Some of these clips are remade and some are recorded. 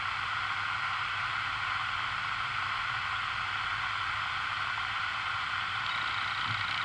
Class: recorded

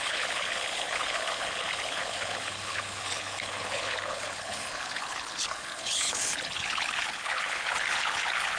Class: remade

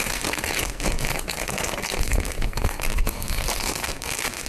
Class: remade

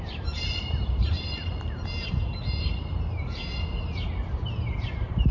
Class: remade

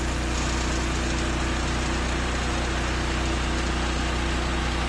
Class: recorded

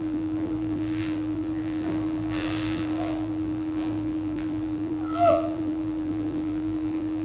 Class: remade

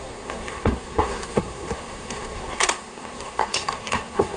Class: remade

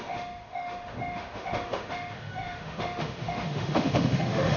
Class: remade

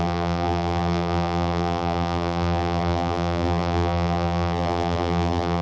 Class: remade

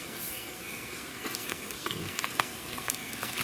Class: remade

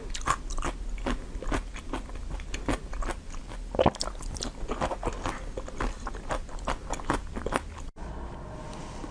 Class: recorded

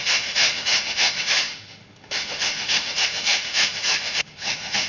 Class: remade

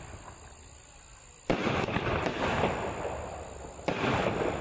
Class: recorded